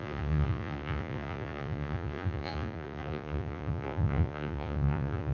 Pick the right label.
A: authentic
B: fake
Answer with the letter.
B